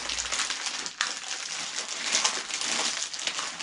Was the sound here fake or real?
real